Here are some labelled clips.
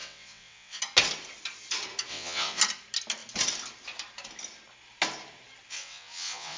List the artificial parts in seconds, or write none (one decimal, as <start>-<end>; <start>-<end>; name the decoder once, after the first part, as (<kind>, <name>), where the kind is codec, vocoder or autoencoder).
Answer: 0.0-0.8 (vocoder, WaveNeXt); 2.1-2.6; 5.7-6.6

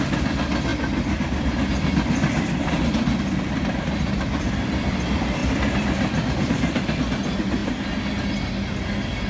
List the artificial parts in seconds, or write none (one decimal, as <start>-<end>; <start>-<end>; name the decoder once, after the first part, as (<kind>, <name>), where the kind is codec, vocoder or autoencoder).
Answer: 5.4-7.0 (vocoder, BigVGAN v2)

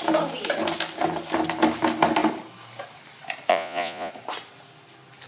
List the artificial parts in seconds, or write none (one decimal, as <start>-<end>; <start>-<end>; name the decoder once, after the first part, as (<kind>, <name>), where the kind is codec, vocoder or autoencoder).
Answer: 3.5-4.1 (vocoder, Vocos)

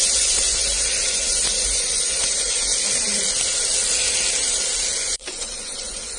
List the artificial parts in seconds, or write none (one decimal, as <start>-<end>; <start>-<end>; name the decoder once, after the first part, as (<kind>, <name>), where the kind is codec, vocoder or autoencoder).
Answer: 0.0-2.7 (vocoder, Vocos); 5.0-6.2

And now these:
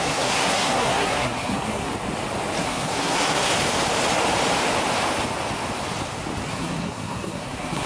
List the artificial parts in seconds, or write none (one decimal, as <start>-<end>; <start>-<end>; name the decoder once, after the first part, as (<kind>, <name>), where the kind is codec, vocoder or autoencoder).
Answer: 0.0-1.9 (codec, SNAC); 2.6-3.5; 6.5-7.9

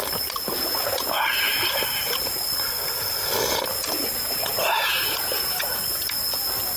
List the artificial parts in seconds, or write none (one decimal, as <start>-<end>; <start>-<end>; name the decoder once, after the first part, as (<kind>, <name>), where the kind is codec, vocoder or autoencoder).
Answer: 4.9-5.8 (vocoder, BigVGAN v2)

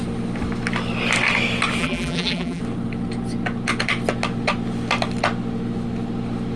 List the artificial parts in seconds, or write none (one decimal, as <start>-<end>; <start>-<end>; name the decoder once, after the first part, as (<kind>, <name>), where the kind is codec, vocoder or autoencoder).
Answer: 1.8-2.6 (vocoder, BigVGAN v2)

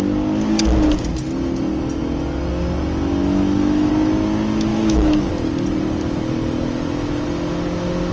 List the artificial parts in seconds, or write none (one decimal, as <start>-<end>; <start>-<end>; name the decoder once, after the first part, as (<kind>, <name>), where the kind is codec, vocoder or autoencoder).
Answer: 3.2-3.9 (autoencoder, DAC-VAE); 4.7-5.3